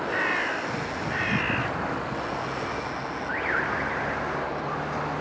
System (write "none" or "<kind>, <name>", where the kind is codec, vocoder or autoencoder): none